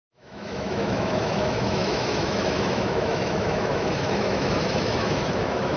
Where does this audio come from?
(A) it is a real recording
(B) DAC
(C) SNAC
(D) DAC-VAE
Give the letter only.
D